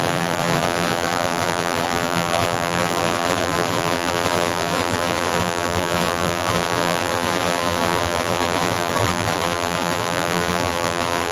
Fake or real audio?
fake